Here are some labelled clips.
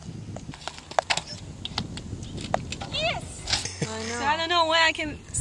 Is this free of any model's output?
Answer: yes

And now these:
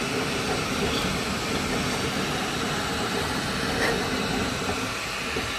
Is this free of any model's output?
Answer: yes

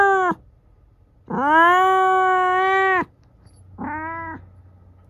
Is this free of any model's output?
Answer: yes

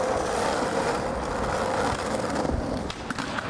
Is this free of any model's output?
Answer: yes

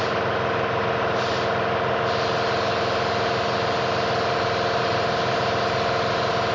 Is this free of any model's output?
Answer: yes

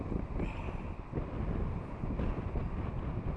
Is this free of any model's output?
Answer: yes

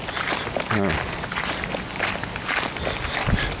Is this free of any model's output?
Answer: yes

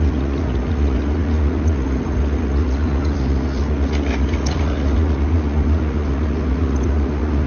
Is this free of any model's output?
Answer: no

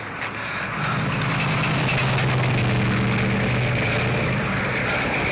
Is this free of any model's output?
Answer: yes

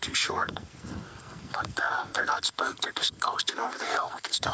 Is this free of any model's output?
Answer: no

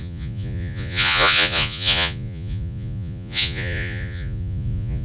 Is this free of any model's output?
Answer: no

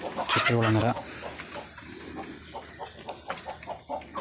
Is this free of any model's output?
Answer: yes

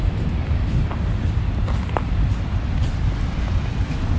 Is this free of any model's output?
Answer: yes